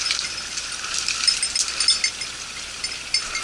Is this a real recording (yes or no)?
yes